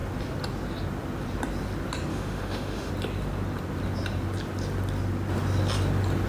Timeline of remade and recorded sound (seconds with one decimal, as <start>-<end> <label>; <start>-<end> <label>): 0.0-2.1 recorded; 2.1-2.9 remade; 2.9-6.3 recorded